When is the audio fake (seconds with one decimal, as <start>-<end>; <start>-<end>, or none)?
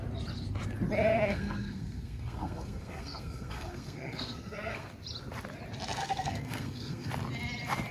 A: 1.1-4.9; 6.0-7.1